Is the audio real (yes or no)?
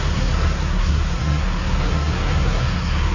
no